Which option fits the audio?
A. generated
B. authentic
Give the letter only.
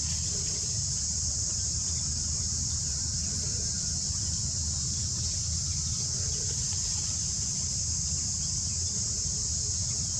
A